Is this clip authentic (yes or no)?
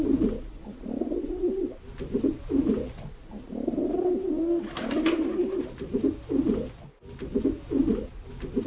yes